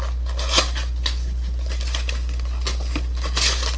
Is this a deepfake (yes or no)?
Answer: no